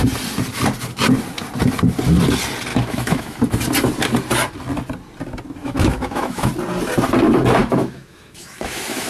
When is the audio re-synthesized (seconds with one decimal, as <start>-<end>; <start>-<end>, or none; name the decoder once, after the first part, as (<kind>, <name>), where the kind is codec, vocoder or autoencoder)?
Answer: 2.7-3.4 (autoencoder, DAC-VAE); 5.6-6.5; 7.6-9.1